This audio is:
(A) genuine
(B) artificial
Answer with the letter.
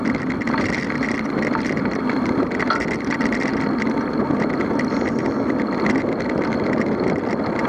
A